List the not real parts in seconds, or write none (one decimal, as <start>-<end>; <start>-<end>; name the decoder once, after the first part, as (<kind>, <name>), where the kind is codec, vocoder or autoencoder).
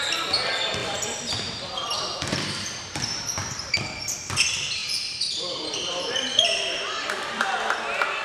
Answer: 0.8-3.7 (vocoder, BigVGAN v2); 4.8-7.5